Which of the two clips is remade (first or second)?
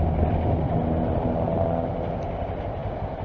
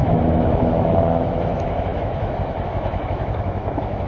second